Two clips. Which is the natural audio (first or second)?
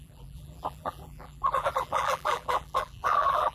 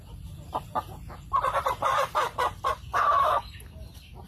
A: second